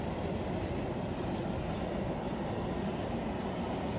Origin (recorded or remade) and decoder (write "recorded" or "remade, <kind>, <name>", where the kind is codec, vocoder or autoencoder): recorded